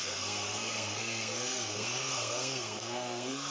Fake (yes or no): yes